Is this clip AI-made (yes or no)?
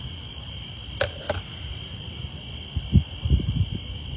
no